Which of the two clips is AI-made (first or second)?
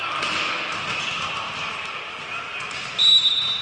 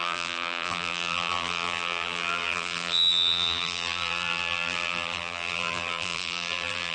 second